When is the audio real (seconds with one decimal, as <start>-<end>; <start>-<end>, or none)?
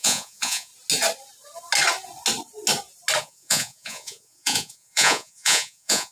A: 0.7-3.2